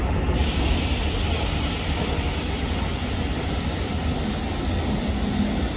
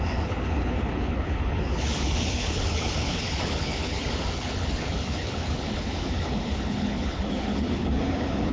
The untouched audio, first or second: first